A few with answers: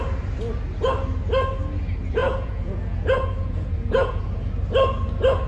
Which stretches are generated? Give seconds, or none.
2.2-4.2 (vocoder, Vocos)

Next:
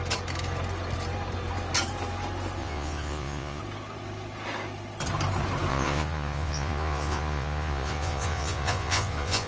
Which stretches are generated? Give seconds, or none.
2.6-3.6 (vocoder, Vocos); 5.7-9.5

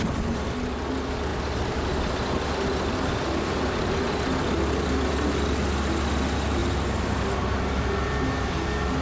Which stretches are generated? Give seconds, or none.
none

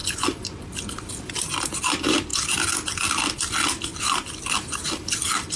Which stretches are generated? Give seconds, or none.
none